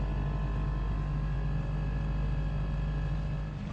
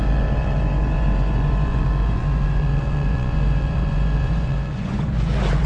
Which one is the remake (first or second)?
second